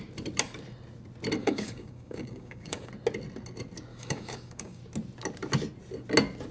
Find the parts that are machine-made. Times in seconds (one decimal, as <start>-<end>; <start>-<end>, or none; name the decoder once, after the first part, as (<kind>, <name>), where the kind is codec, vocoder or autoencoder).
1.4-2.9 (codec, DAC); 3.9-4.8